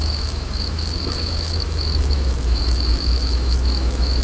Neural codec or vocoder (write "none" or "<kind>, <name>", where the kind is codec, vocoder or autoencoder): autoencoder, DAC-VAE